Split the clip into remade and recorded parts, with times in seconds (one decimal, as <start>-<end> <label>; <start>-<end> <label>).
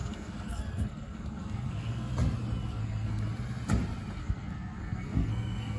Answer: 0.0-2.1 remade; 2.1-2.7 recorded; 2.7-3.2 remade; 3.2-4.2 recorded; 4.2-5.8 remade